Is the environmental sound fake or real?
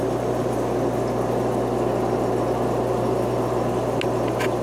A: real